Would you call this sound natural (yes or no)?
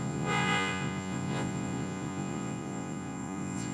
no